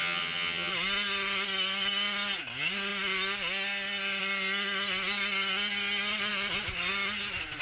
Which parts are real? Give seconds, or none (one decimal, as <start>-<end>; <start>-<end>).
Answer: 0.7-7.6